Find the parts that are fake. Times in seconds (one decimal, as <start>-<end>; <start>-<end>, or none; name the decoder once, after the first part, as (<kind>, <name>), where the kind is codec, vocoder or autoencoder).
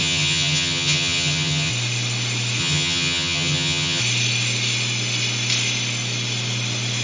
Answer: 0.0-1.7 (vocoder, HiFi-GAN); 2.6-4.0